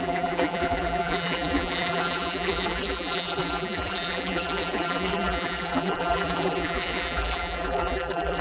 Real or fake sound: fake